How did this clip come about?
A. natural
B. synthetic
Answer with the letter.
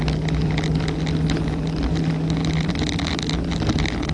A